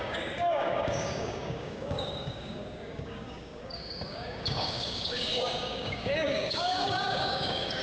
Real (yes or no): no